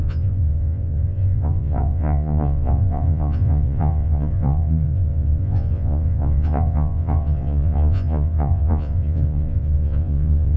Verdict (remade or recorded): remade